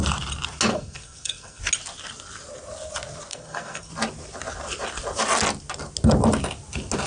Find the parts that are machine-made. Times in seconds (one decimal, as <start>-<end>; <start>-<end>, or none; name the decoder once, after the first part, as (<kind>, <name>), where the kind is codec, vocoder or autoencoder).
0.7-1.6 (codec, SNAC); 3.3-3.9